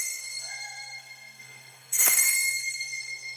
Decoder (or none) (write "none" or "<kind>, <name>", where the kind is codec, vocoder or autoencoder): codec, SNAC